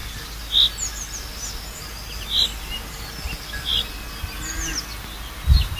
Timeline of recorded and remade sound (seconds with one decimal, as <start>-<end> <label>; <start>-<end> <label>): 0.0-5.8 recorded